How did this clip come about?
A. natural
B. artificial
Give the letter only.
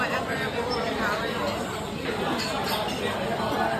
A